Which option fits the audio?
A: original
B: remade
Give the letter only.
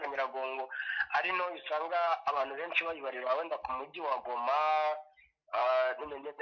A